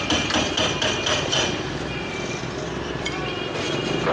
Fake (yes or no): yes